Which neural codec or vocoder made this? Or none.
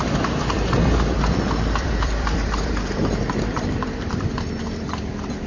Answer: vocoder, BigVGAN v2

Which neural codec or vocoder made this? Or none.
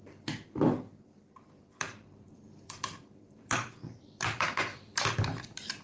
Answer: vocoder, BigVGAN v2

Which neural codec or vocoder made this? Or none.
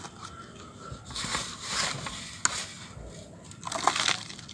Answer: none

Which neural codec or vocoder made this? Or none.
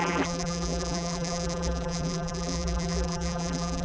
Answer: vocoder, BigVGAN v2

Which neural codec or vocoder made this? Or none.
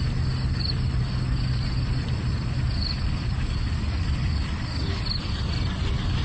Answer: none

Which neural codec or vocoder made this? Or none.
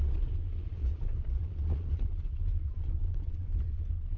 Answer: vocoder, Vocos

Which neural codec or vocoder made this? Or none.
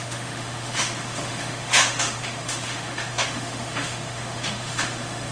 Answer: autoencoder, DAC-VAE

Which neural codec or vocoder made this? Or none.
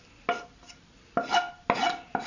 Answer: none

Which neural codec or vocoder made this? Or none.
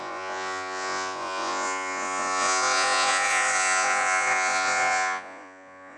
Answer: vocoder, Vocos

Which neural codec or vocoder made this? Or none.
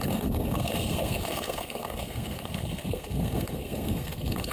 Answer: codec, SNAC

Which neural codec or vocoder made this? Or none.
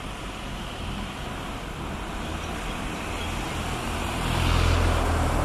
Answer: none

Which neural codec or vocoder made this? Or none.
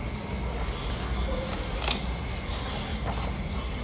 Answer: none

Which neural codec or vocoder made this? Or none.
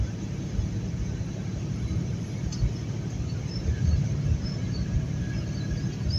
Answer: none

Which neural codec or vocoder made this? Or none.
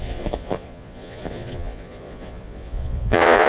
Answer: vocoder, Vocos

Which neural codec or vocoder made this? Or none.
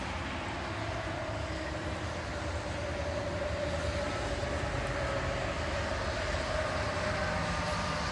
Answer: none